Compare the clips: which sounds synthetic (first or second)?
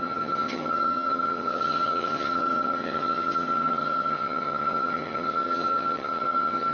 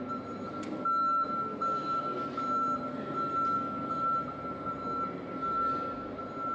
first